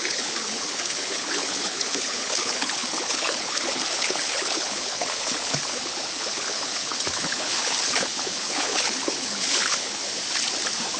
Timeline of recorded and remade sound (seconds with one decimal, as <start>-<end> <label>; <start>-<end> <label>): 0.0-10.0 remade; 10.0-11.0 recorded